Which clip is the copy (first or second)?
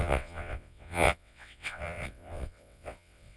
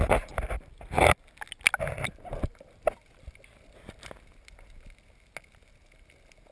first